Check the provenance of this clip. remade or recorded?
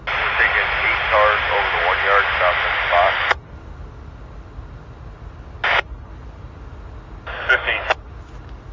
recorded